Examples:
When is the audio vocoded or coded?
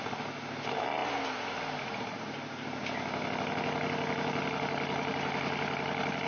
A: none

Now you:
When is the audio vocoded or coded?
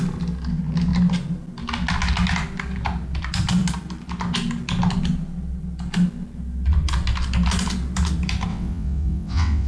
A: 8.5-9.7 (vocoder, WaveNeXt)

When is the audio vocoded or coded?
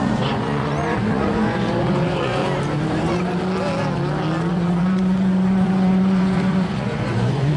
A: 0.0-2.4 (vocoder, Vocos); 4.5-7.6